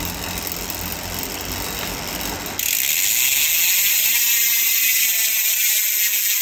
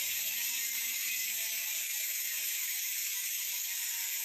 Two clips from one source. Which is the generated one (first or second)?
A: second